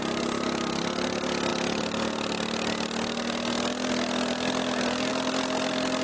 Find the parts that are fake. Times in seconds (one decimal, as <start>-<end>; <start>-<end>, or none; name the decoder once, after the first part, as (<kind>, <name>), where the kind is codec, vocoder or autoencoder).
none